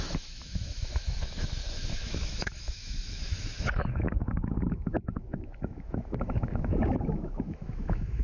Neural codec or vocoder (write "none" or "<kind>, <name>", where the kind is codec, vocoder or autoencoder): autoencoder, DAC-VAE